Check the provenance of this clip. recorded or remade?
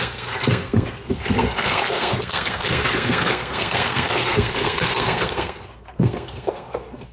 remade